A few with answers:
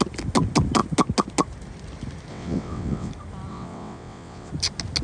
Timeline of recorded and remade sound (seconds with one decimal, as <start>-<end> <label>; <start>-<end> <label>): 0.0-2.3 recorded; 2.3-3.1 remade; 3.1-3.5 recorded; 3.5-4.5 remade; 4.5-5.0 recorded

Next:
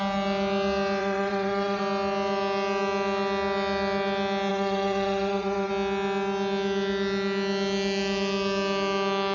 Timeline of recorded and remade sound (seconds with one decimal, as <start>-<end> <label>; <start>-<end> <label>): 0.0-1.0 recorded; 1.0-1.8 remade; 1.8-4.5 recorded; 4.5-5.7 remade; 5.7-9.3 recorded

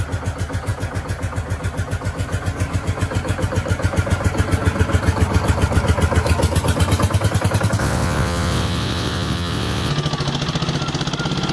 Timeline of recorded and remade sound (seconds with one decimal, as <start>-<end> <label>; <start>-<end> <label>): 0.0-7.8 recorded; 7.8-9.9 remade; 9.9-11.5 recorded

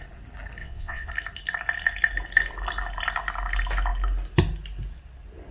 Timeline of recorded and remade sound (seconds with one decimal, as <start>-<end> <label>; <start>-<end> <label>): 0.0-0.6 recorded; 0.6-1.1 remade; 1.1-5.5 recorded

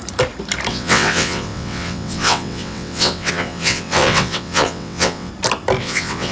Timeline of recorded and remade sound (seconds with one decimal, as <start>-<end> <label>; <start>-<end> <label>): 0.0-0.7 recorded; 0.7-5.3 remade; 5.3-5.8 recorded; 5.8-6.3 remade